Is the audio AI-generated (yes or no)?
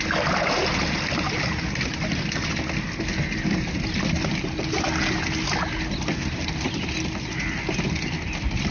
no